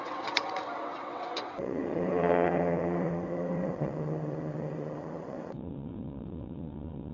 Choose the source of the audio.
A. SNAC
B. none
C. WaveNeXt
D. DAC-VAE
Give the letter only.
C